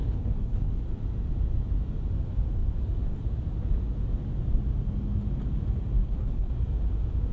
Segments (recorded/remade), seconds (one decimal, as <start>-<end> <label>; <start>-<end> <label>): 0.0-0.8 remade; 0.8-6.0 recorded; 6.0-6.5 remade; 6.5-7.3 recorded